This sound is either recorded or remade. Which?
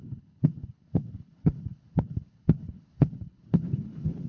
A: remade